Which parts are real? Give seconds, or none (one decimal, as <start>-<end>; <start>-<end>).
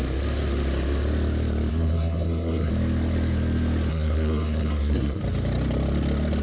0.0-1.7; 2.7-3.9; 5.2-6.4